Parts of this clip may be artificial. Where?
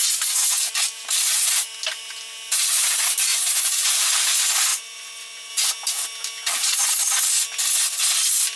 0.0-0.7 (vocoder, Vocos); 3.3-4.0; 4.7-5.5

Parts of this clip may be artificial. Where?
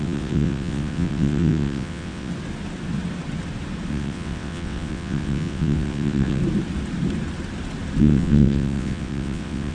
0.0-2.3 (vocoder, WaveNeXt); 3.9-6.4; 8.0-9.7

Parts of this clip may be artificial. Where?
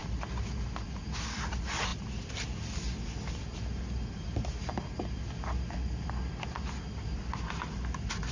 none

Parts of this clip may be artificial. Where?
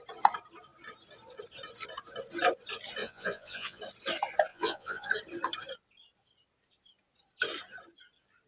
3.0-3.8 (vocoder, Vocos); 4.5-5.1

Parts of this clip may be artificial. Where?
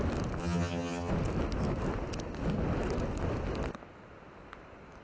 0.4-1.1 (vocoder, HiFi-GAN)